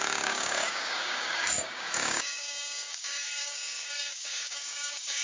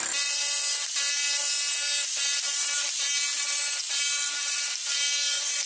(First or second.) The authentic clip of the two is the second